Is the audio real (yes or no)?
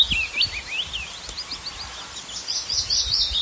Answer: yes